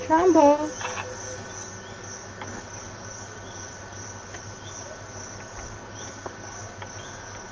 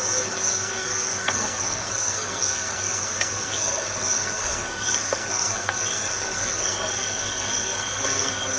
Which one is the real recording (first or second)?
first